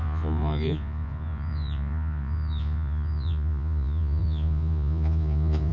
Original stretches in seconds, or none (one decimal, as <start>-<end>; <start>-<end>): none